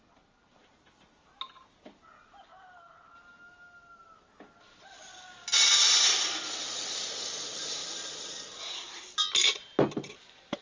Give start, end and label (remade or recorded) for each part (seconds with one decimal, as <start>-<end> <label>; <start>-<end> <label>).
0.0-10.6 recorded